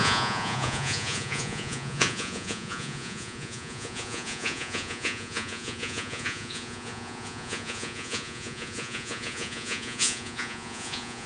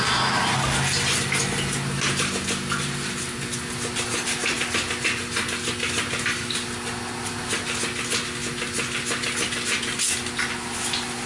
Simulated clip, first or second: first